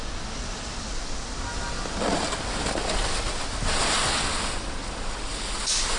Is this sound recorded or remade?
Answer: recorded